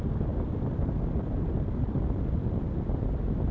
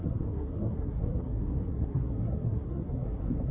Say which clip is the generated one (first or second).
second